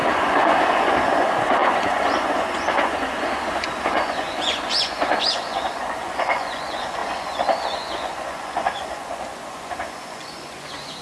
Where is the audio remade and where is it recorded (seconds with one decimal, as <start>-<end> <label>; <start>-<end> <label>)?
0.0-11.0 remade